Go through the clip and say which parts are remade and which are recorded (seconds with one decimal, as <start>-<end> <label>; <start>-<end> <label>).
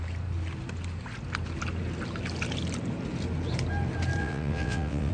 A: 0.0-4.2 recorded; 4.2-5.1 remade